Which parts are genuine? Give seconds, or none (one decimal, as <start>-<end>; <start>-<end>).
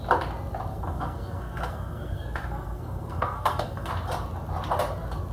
0.0-0.7; 3.9-5.3